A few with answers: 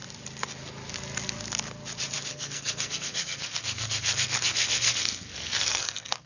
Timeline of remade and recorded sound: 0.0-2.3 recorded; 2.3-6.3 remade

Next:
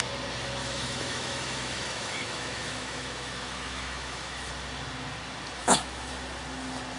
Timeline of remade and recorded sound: 0.0-0.6 recorded; 0.6-4.5 remade; 4.5-5.6 recorded; 5.6-6.1 remade; 6.1-7.0 recorded